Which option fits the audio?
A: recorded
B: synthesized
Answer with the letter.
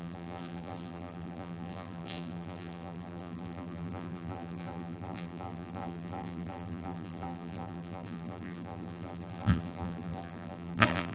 B